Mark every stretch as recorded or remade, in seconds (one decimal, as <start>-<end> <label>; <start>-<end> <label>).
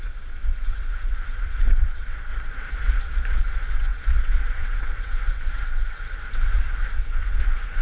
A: 0.0-2.3 remade; 2.3-3.4 recorded; 3.4-7.8 remade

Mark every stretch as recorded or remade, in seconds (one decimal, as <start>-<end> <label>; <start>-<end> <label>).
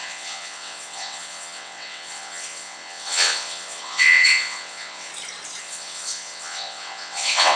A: 0.0-5.1 remade; 5.1-5.6 recorded; 5.6-7.6 remade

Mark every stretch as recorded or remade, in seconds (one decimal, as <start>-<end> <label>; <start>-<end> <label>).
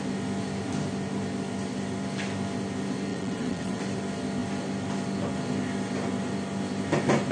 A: 0.0-3.1 recorded; 3.1-3.8 remade; 3.8-7.3 recorded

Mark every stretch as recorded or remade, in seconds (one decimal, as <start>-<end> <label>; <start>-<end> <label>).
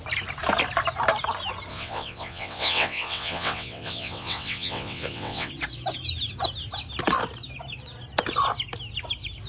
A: 0.0-1.7 recorded; 1.7-5.5 remade; 5.5-9.5 recorded